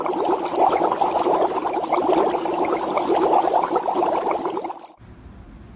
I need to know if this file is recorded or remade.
recorded